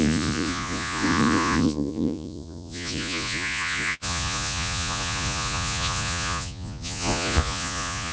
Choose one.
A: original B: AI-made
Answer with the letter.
B